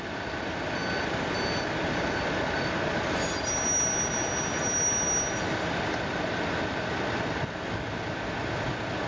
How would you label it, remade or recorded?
recorded